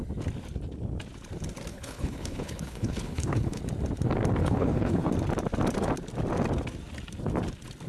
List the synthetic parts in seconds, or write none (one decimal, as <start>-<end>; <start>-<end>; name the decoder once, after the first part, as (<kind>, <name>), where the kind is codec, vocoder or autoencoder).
1.7-3.6 (codec, HILCodec); 4.4-5.1